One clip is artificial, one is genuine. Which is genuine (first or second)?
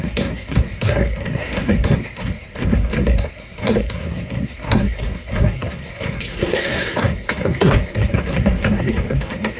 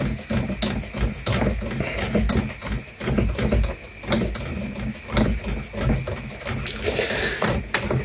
second